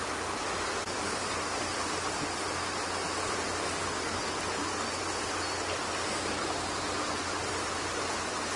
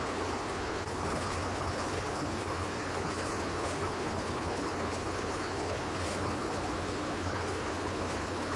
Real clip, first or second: first